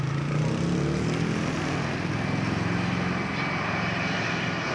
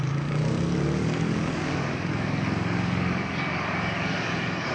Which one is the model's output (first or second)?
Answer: second